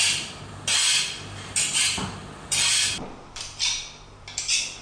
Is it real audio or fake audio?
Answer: fake